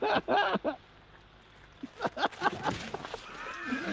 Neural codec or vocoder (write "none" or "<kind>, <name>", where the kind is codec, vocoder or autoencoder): none